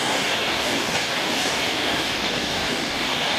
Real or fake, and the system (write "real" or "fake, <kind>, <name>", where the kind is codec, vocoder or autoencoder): fake, codec, DAC